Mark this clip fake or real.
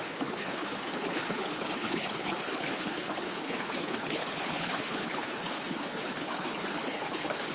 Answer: fake